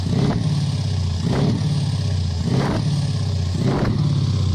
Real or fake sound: real